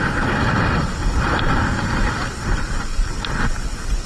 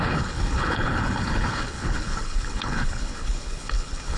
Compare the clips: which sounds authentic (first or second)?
first